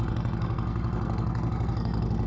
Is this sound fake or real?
fake